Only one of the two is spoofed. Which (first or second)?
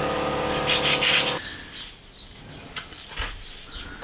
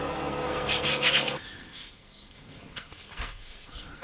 second